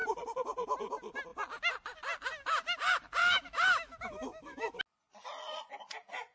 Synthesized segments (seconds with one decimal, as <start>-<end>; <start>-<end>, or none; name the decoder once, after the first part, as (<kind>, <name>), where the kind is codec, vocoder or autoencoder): 3.2-4.8 (autoencoder, DAC-VAE)